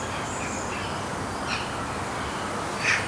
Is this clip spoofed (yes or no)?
no